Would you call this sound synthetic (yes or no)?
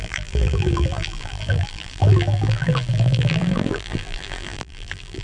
yes